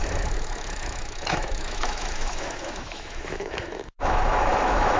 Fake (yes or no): yes